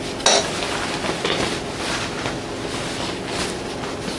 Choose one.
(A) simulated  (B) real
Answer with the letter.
B